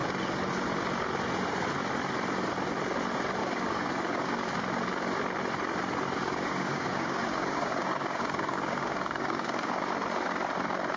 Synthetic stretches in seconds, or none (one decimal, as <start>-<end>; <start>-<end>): 3.4-4.5; 6.2-9.8